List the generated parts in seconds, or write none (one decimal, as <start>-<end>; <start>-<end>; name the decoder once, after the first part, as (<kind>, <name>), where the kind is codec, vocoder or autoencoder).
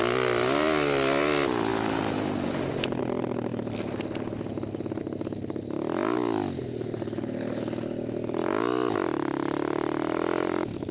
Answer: none